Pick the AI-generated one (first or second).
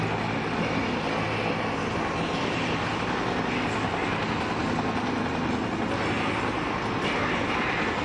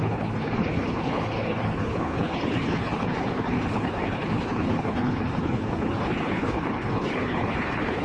second